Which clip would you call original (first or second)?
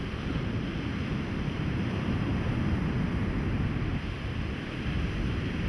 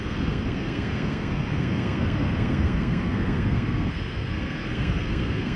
first